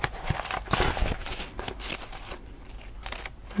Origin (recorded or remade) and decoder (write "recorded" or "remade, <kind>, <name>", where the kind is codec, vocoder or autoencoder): recorded